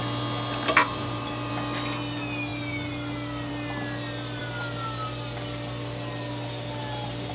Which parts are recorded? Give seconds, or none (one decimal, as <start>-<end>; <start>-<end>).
0.0-0.8; 1.5-7.3